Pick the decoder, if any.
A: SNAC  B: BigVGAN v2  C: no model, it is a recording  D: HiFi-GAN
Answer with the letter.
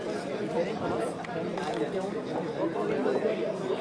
C